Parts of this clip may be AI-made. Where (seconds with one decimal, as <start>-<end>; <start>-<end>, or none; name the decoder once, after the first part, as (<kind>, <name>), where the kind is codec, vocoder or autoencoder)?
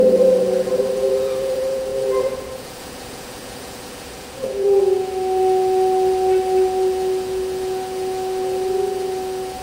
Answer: 0.0-9.6 (vocoder, Vocos)